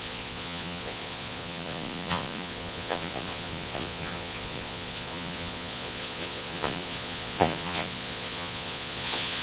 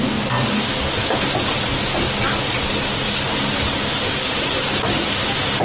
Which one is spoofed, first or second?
first